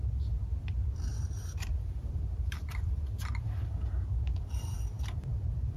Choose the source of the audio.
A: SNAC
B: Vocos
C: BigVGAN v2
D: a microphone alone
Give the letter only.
C